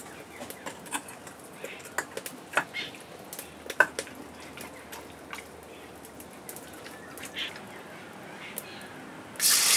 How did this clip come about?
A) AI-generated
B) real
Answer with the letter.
B